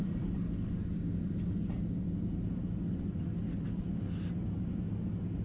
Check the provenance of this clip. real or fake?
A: real